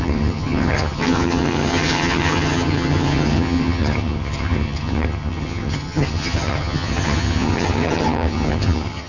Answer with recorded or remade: remade